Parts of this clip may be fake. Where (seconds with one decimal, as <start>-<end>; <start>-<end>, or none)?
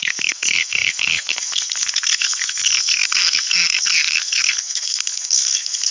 0.0-5.9